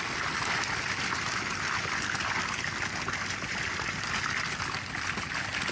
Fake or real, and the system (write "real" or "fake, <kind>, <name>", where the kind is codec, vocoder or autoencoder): real